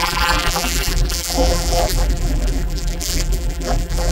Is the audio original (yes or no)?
no